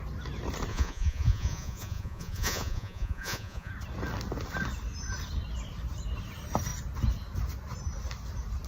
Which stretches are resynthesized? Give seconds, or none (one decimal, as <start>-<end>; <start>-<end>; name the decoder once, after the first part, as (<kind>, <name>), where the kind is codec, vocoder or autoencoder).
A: 0.7-3.7 (vocoder, Vocos)